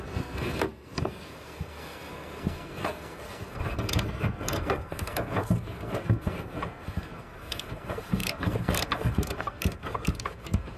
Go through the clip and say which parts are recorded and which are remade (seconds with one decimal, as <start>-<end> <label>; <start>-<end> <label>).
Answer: 0.0-10.8 remade